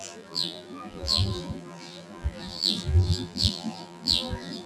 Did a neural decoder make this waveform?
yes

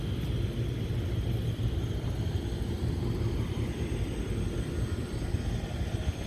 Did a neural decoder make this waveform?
no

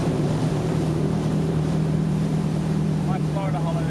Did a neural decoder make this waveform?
yes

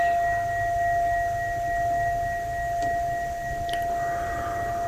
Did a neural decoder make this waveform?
no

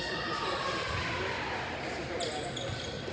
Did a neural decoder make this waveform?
no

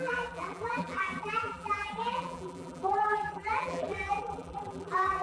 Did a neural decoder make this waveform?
yes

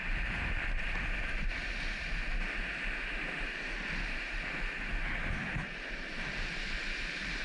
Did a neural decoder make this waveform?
no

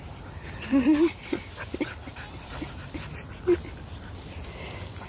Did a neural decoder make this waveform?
yes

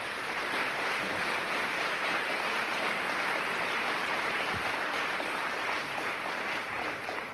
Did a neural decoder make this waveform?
yes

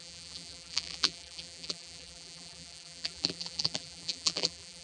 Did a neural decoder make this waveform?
yes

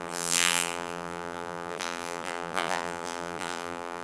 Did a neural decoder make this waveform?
yes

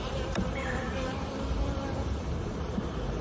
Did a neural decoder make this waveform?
yes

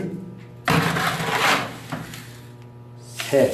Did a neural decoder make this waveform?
no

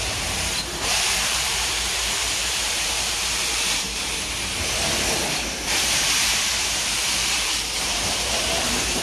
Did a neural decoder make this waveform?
yes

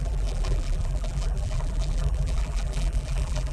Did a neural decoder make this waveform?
yes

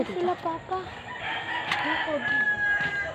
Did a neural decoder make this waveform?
no